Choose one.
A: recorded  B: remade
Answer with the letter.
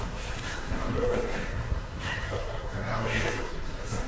B